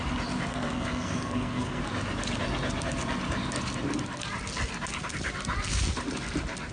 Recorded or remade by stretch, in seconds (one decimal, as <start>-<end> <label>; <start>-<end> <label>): 0.0-0.5 recorded; 0.5-1.8 remade; 1.8-6.7 recorded